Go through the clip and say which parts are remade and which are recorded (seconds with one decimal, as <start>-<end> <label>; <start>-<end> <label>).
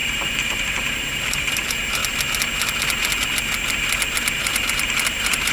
0.0-2.0 remade; 2.0-4.3 recorded; 4.3-5.5 remade